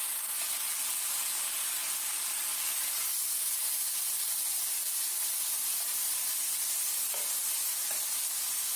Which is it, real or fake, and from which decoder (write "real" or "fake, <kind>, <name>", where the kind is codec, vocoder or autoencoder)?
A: real